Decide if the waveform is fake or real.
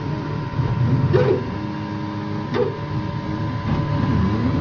real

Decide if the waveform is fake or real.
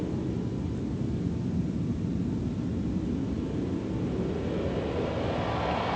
real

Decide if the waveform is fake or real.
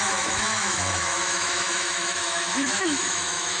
fake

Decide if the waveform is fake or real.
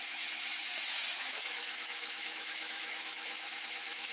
fake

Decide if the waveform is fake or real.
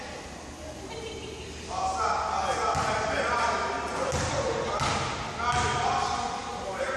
real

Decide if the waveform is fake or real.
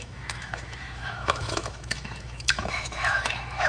fake